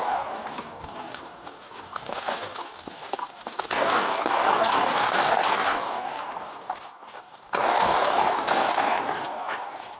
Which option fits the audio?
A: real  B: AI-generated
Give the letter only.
B